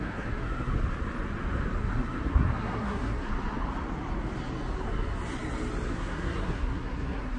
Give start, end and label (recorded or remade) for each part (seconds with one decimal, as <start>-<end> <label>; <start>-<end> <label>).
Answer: 0.0-0.7 remade; 0.7-1.8 recorded; 1.8-3.3 remade; 3.3-5.9 recorded; 5.9-7.4 remade

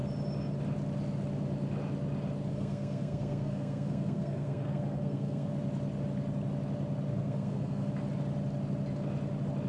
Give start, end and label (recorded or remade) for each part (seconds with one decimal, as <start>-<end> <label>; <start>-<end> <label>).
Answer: 0.0-2.5 recorded; 2.5-5.5 remade; 5.5-7.1 recorded; 7.1-7.9 remade; 7.9-9.7 recorded